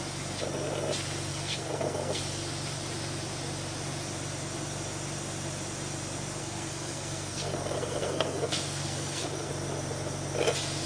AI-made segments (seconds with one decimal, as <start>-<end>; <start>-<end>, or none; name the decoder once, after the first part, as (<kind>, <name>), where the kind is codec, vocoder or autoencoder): 1.3-2.2 (codec, SNAC); 6.4-9.5